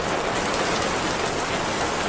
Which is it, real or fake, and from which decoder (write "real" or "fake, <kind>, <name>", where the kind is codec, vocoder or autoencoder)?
real